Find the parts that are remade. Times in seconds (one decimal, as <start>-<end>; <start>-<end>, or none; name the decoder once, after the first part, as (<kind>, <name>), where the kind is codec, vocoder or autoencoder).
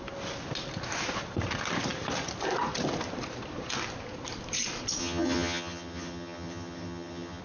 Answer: 5.0-7.4 (vocoder, HiFi-GAN)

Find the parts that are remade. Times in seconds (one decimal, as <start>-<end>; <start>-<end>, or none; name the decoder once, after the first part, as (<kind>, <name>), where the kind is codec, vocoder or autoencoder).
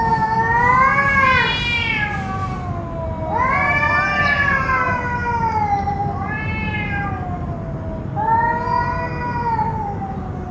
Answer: none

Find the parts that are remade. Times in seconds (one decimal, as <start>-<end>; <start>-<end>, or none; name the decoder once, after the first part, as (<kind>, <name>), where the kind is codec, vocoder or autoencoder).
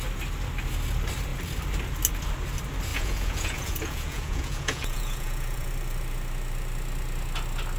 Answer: 2.9-5.7 (vocoder, Vocos)